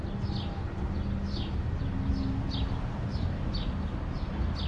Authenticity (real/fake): real